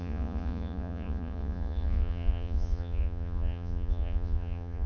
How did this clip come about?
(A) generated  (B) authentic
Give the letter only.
A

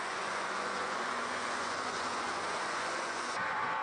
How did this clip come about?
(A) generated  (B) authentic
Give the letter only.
A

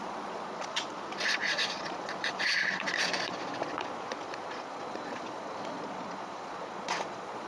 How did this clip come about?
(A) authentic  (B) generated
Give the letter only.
B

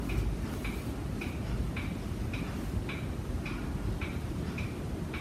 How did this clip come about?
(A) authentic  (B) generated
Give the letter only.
A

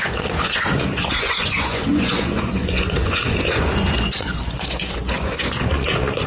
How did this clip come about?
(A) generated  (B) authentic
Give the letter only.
A